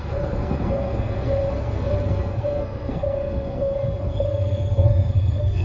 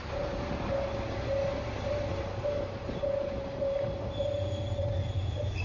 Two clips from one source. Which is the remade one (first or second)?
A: first